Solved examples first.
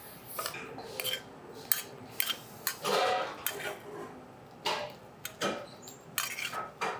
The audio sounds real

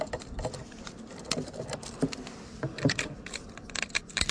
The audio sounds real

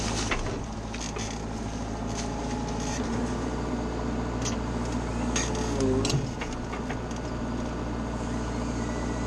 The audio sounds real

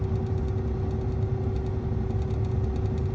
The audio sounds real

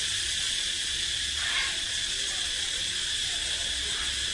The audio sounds real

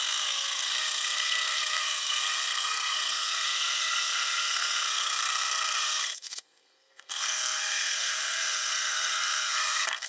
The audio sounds fake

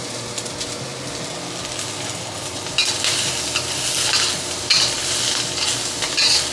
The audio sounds real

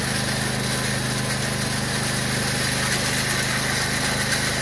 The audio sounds real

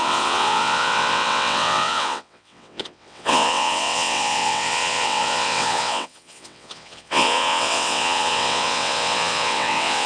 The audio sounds fake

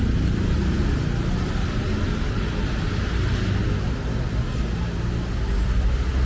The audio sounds real